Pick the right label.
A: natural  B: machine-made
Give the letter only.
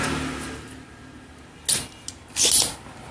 A